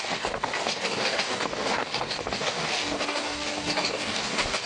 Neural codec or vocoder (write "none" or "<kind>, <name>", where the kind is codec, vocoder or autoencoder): codec, DAC